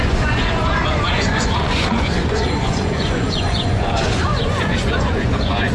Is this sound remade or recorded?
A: remade